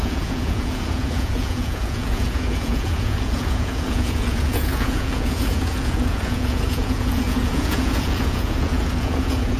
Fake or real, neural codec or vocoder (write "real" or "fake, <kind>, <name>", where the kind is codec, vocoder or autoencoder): fake, vocoder, Vocos